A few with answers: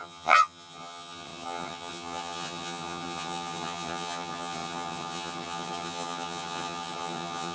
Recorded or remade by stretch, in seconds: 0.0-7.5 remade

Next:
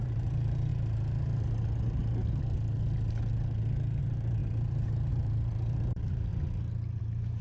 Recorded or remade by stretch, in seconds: 0.0-0.7 remade; 0.7-4.0 recorded; 4.0-6.3 remade; 6.3-7.0 recorded; 7.0-7.4 remade

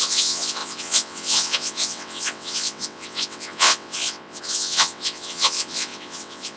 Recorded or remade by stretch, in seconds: 0.0-6.6 remade

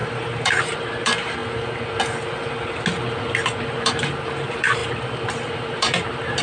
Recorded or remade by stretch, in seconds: 0.0-1.4 remade; 1.4-3.5 recorded; 3.5-6.4 remade